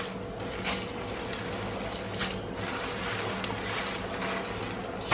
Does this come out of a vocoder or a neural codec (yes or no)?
no